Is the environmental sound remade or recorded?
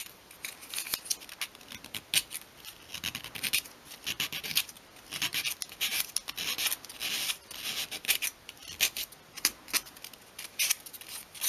recorded